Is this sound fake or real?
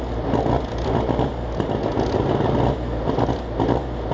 real